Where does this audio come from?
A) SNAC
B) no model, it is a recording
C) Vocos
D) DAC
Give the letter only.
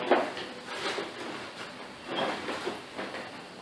B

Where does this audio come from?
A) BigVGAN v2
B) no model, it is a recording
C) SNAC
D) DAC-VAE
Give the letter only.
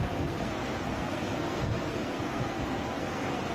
C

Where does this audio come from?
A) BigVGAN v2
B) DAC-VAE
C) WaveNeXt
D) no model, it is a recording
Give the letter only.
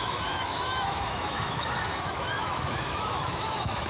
B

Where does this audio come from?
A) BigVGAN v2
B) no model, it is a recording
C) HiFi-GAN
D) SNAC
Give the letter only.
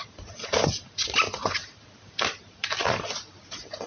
A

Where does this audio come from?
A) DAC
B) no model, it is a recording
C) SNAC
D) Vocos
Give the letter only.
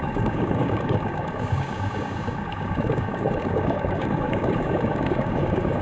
A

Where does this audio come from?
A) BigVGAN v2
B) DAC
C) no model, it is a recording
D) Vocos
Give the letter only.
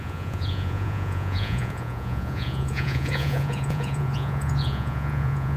D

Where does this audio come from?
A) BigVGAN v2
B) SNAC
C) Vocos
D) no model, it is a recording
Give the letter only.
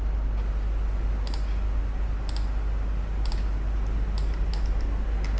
D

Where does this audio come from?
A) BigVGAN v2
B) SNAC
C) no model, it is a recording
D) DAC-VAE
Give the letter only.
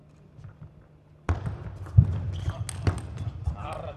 C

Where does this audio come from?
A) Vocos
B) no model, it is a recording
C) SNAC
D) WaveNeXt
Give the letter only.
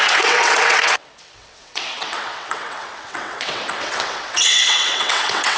D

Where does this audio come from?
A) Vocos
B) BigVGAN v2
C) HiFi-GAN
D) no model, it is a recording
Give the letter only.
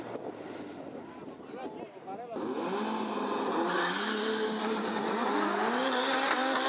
D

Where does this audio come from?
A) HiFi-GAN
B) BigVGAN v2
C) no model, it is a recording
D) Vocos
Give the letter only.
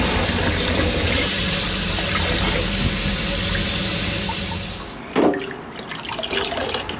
C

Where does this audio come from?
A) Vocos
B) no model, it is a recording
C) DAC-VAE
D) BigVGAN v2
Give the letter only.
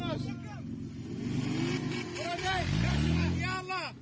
B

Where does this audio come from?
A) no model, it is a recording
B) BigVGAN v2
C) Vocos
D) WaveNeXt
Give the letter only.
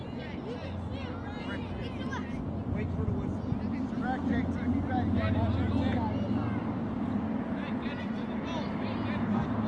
A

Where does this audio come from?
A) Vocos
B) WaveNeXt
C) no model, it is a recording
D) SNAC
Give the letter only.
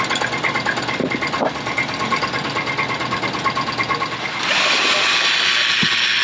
C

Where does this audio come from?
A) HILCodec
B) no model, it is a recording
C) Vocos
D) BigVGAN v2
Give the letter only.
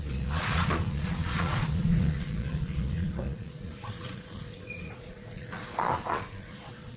C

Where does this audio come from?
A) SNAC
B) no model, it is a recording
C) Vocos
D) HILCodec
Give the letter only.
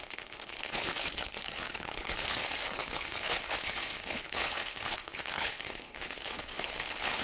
D